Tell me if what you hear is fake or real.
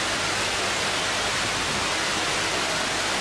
real